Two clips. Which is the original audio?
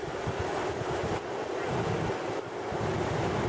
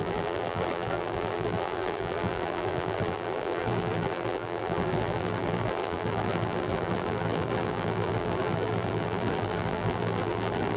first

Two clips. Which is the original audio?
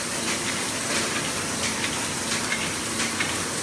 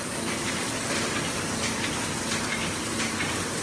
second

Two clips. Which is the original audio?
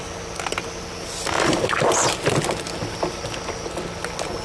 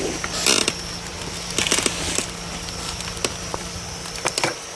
first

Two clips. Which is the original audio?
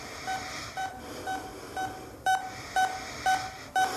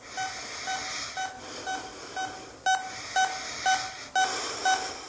second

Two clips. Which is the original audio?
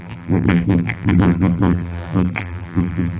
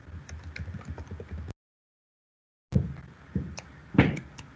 second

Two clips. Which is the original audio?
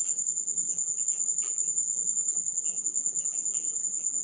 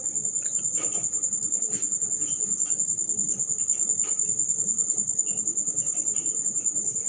second